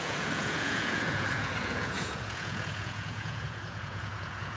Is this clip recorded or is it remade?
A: remade